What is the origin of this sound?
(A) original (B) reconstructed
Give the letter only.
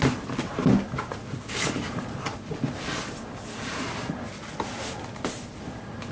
A